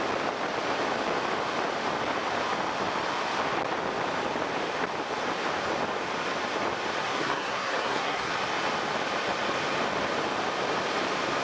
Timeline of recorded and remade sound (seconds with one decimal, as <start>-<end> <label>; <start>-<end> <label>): 0.0-7.0 recorded; 7.0-8.3 remade; 8.3-11.4 recorded

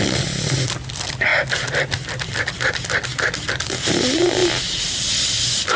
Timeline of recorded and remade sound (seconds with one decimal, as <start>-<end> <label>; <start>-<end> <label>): 0.0-5.8 recorded